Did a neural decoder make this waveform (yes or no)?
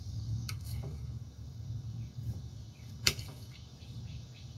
yes